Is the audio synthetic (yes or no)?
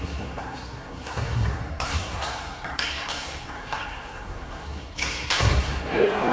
yes